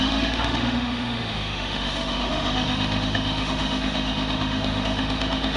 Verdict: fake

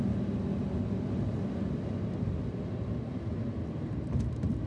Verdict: real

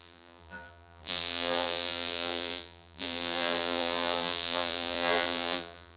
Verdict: fake